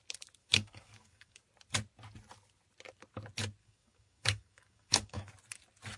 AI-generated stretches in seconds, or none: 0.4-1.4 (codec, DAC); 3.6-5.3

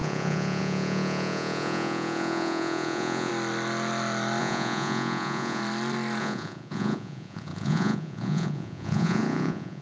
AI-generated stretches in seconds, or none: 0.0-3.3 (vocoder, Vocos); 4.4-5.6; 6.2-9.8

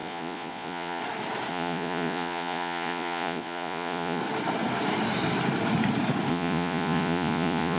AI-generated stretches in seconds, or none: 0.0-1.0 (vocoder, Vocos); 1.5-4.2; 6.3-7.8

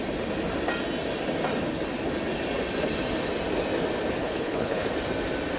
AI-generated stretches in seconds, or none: 4.2-4.9 (codec, HILCodec)

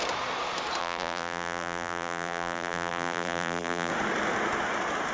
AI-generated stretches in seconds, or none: 0.8-3.9 (vocoder, BigVGAN v2)